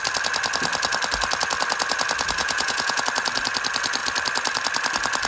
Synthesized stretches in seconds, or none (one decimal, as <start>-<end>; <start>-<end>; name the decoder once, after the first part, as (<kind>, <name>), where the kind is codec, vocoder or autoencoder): 2.4-3.0 (vocoder, Vocos)

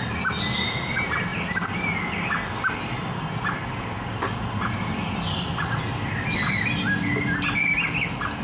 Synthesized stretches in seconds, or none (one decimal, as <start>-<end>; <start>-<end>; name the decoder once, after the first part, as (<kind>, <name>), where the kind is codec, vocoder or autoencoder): none